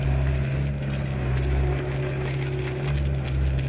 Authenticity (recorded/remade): recorded